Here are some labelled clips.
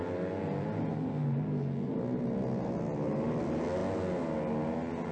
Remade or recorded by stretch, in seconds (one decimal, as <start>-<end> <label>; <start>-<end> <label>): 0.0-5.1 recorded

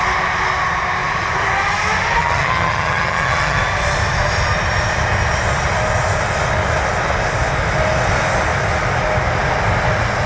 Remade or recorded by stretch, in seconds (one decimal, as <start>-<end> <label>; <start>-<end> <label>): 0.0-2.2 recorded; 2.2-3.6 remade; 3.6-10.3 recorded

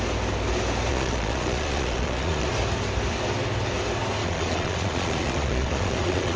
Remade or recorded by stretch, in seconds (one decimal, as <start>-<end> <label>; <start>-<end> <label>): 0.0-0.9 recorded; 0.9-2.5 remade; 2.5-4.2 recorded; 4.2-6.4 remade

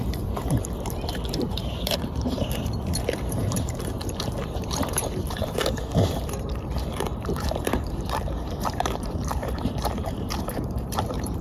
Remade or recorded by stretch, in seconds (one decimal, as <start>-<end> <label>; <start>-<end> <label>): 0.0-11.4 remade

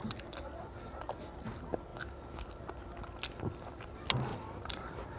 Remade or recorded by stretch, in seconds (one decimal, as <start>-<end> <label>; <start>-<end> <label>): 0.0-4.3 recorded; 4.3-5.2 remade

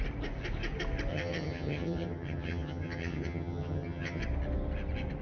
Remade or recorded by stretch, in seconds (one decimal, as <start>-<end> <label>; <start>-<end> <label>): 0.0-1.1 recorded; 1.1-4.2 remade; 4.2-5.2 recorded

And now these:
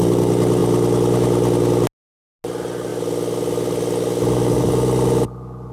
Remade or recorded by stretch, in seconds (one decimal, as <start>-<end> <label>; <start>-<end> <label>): 0.0-5.7 recorded